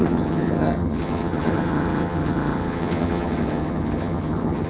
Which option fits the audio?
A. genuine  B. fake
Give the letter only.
B